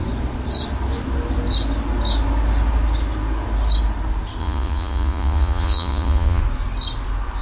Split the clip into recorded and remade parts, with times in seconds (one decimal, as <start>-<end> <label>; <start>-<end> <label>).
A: 0.0-4.4 recorded; 4.4-6.4 remade; 6.4-7.4 recorded